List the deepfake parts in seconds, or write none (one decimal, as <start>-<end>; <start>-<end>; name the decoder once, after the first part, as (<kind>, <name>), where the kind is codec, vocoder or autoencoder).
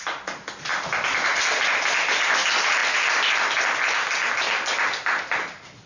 none